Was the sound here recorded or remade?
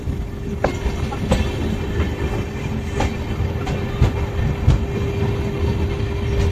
recorded